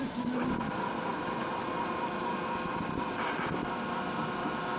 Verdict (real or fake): real